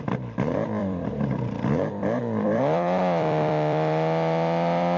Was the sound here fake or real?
fake